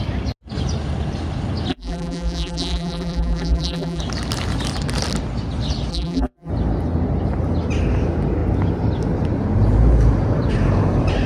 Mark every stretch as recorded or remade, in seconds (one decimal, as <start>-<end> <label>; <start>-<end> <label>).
0.0-1.7 recorded; 1.7-4.0 remade; 4.0-5.9 recorded; 5.9-6.5 remade; 6.5-11.3 recorded